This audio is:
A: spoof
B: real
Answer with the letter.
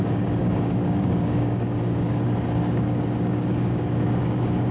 A